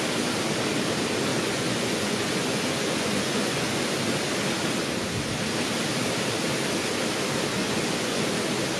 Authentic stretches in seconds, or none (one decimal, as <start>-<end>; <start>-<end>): 0.0-1.3; 3.8-7.6; 8.4-8.8